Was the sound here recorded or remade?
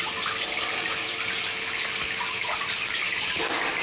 recorded